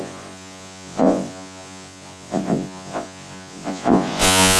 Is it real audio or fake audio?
fake